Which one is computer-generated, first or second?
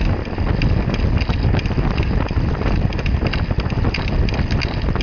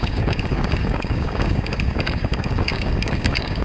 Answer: second